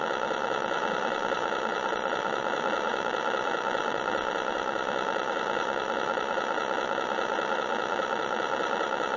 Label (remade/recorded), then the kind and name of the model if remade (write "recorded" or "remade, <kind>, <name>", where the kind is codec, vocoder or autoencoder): remade, vocoder, Vocos